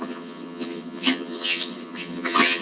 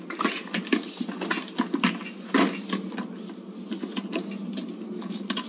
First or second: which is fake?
first